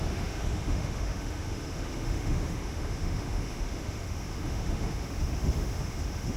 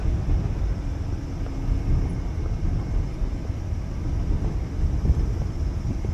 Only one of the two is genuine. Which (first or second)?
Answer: second